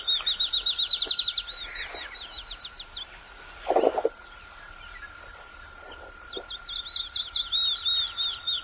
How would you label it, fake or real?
real